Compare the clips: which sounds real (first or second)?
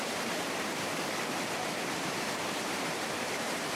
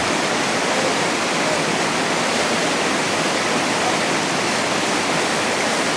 second